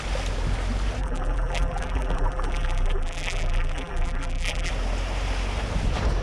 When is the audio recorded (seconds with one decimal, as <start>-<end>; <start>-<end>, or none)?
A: 0.0-1.0; 4.7-6.2